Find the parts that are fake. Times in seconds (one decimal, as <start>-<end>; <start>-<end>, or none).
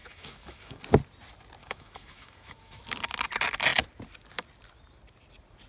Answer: 0.0-0.8; 1.6-2.8